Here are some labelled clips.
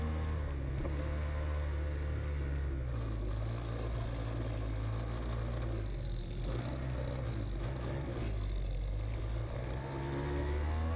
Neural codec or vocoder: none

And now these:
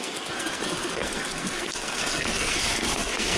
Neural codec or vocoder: codec, SNAC